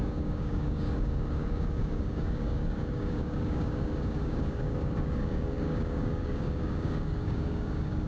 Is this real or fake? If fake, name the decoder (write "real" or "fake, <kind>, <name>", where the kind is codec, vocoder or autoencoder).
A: fake, codec, DAC